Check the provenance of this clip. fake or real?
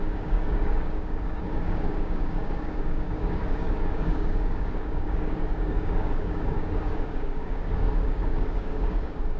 fake